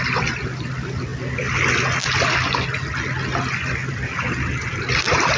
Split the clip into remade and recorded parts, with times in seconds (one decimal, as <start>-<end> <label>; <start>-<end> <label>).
0.0-5.4 recorded